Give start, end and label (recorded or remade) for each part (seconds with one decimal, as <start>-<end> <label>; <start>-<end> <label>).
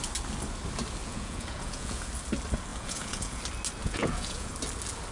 0.0-1.0 recorded; 1.0-2.1 remade; 2.1-2.7 recorded; 2.7-3.4 remade; 3.4-3.8 recorded; 3.8-4.5 remade; 4.5-5.1 recorded